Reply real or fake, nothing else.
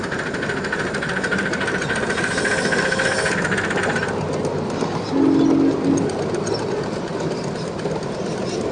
real